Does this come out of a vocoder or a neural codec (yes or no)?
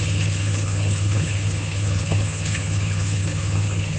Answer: yes